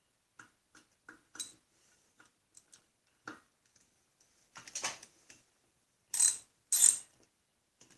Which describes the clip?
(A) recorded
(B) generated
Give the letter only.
A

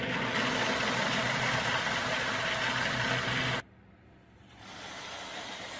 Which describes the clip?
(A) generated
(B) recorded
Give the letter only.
B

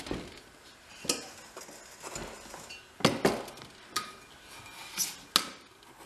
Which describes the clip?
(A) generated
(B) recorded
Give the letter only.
B